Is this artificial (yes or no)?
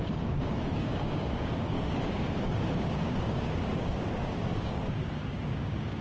yes